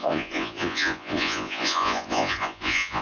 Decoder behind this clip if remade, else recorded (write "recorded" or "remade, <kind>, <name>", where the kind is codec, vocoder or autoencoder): remade, vocoder, Vocos